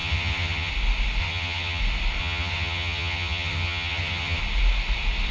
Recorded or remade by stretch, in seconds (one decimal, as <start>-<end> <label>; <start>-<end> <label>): 0.0-0.7 remade; 0.7-1.2 recorded; 1.2-1.8 remade; 1.8-2.2 recorded; 2.2-4.4 remade; 4.4-5.3 recorded